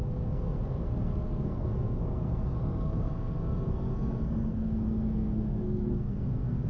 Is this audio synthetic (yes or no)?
yes